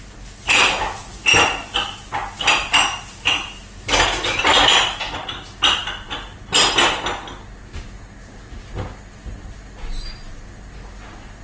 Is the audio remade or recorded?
recorded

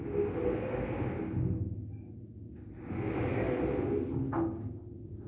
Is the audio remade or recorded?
recorded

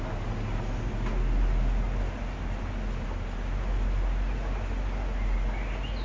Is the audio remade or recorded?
recorded